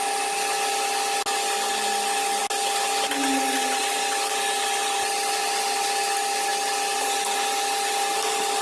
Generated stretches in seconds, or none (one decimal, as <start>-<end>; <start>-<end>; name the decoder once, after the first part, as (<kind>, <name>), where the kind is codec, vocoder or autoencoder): none